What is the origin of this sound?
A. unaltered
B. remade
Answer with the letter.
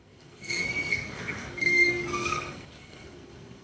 B